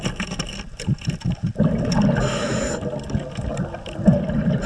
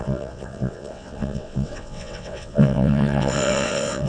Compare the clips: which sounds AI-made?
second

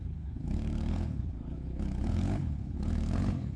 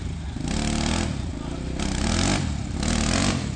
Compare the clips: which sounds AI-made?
first